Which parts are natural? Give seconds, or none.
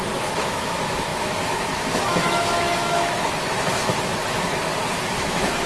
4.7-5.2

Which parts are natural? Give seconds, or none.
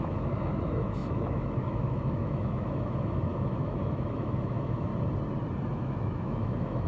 4.9-5.7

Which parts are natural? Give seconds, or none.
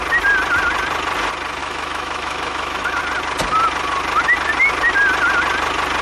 0.0-1.6; 3.0-6.0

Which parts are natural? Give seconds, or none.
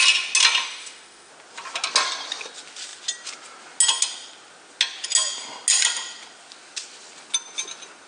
0.0-0.6; 1.3-8.1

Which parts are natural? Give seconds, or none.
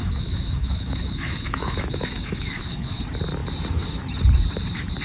3.0-5.0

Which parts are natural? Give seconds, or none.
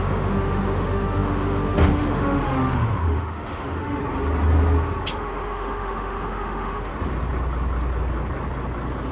4.0-5.1; 6.9-9.1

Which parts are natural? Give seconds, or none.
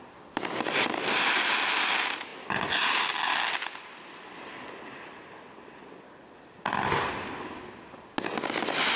0.0-9.0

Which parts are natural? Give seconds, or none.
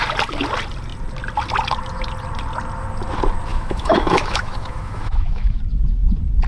0.0-3.5; 5.6-6.5